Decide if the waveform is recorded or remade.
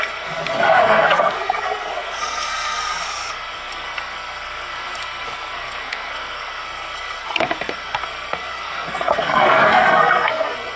remade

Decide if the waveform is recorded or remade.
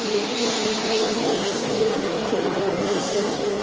remade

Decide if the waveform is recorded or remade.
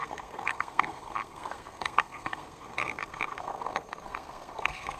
remade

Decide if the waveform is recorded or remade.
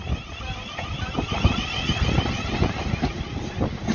recorded